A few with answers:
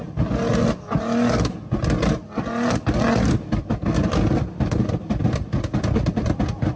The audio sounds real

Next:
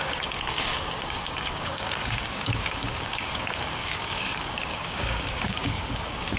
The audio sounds fake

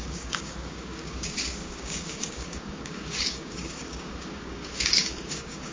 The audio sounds fake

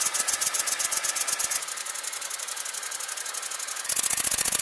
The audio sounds real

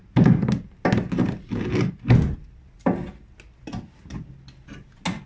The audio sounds real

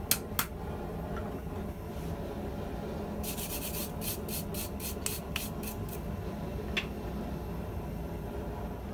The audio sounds real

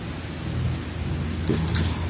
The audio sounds real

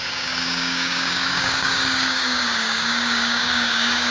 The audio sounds fake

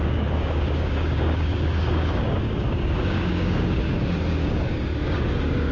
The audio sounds fake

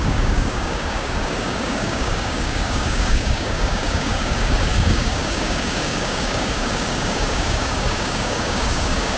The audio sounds fake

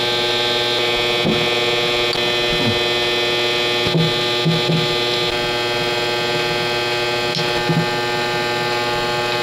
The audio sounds real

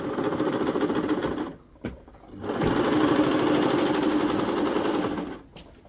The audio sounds real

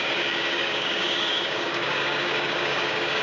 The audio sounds fake